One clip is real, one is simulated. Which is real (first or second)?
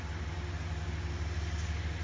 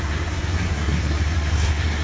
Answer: first